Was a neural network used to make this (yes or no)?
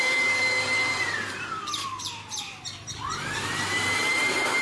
yes